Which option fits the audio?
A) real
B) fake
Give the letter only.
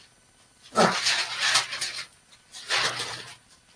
A